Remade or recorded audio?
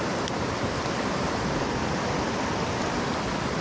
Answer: recorded